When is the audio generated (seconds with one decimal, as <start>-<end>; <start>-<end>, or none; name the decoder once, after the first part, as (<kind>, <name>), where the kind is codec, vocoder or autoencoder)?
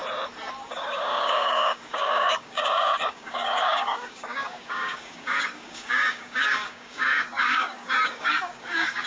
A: 0.7-9.1 (codec, DAC)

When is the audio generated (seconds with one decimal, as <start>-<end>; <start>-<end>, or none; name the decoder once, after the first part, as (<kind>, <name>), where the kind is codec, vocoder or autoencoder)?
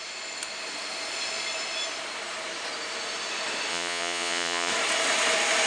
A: 3.7-4.7 (vocoder, Vocos)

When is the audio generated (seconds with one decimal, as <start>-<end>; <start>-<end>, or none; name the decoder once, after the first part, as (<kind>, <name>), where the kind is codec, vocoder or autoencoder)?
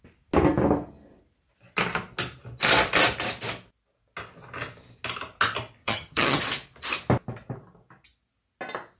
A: 5.8-6.4 (vocoder, HiFi-GAN)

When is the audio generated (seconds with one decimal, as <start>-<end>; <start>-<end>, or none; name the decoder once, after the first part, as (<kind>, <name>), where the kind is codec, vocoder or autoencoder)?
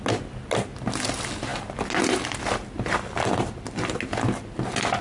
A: none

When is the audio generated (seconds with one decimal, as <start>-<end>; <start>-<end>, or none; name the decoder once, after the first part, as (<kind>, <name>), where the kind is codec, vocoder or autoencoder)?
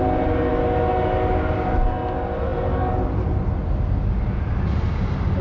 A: none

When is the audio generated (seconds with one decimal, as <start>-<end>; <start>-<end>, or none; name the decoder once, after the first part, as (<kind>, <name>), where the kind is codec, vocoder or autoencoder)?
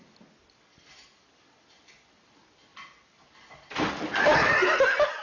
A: none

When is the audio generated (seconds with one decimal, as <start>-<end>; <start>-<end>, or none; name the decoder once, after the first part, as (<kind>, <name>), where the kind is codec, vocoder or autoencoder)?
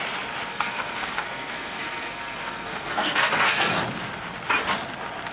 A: 0.5-3.7 (codec, SNAC)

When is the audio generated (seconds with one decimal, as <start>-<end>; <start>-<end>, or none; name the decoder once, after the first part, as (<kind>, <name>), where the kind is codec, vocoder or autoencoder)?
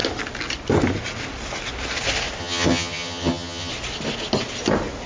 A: 2.4-3.7 (vocoder, HiFi-GAN)